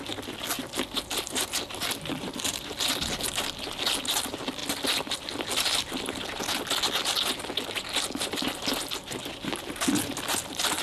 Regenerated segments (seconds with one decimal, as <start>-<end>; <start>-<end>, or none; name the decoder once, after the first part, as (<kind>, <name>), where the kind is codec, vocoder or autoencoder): none